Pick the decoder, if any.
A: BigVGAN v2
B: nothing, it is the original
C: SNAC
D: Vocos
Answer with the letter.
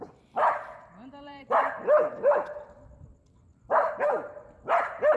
A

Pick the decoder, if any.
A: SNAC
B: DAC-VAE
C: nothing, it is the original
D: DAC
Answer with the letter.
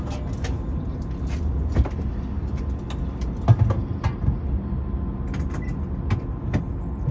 C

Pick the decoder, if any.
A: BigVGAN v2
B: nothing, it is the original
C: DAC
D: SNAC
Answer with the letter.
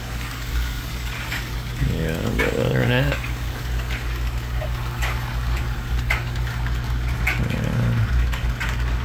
C